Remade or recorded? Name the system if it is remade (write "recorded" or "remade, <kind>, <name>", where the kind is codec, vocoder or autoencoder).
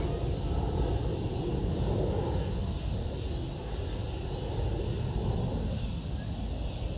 recorded